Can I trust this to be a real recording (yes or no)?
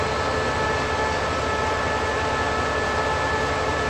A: yes